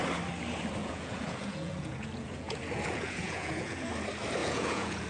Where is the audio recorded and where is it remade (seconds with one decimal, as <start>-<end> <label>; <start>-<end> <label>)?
0.0-0.8 recorded; 0.8-3.9 remade; 3.9-4.4 recorded; 4.4-5.1 remade